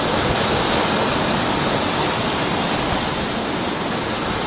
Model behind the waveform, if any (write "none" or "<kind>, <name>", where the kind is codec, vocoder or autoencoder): none